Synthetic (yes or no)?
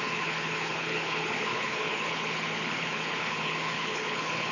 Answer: yes